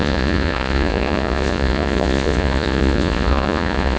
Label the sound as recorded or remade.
remade